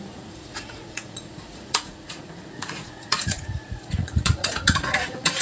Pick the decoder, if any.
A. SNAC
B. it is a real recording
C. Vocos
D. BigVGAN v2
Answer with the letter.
C